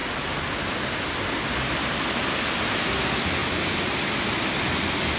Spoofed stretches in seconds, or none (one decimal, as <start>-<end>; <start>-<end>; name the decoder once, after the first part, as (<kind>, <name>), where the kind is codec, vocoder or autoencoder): 3.4-4.5 (vocoder, BigVGAN v2)